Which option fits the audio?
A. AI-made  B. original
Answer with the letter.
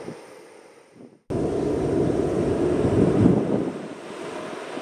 B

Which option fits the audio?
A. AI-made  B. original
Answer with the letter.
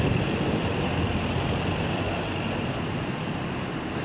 B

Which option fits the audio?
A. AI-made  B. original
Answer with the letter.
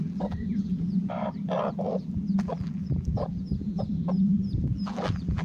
A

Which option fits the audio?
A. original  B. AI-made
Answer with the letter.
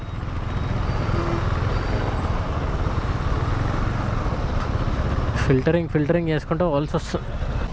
A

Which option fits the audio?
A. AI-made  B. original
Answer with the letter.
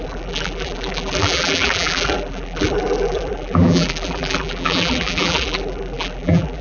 A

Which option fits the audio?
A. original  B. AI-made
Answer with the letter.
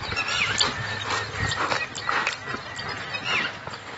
A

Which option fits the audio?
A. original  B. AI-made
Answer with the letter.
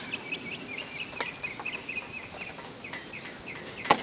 A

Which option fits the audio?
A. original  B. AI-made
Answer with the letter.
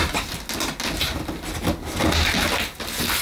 A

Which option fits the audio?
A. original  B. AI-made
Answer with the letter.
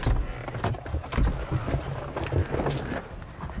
A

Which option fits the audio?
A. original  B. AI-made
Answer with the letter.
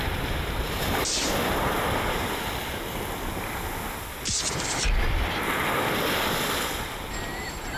B